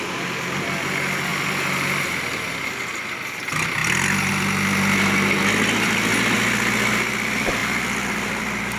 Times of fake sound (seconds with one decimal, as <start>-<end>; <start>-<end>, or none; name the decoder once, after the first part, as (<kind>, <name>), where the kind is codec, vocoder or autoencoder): 7.6-8.4 (vocoder, BigVGAN v2)